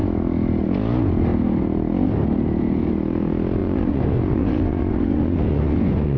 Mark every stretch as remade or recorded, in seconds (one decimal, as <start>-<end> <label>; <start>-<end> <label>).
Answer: 0.0-3.6 recorded; 3.6-6.2 remade

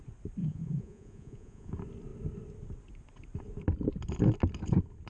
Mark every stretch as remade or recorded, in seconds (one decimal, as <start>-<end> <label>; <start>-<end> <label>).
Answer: 0.0-0.4 recorded; 0.4-1.7 remade; 1.7-5.1 recorded

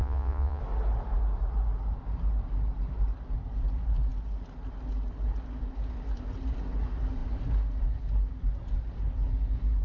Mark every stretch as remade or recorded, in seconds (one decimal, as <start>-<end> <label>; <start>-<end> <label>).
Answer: 0.0-0.6 remade; 0.6-9.8 recorded

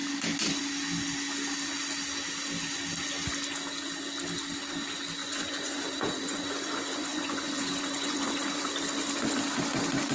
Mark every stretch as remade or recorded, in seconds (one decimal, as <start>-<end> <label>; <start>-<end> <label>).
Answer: 0.0-5.2 recorded; 5.2-8.7 remade; 8.7-10.1 recorded

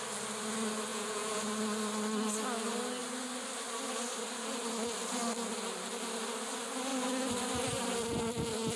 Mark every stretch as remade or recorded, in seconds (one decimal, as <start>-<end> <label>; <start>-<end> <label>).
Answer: 0.0-0.9 recorded; 0.9-1.5 remade; 1.5-8.8 recorded

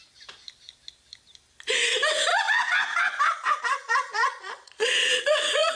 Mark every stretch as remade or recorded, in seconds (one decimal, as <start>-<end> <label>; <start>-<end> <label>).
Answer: 0.0-2.3 recorded; 2.3-5.7 remade

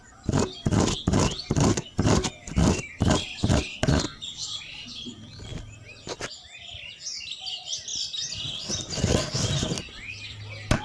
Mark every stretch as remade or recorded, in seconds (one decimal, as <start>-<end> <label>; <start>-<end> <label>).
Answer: 0.0-10.8 recorded